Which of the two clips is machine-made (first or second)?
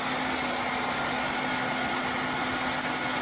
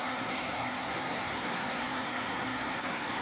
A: second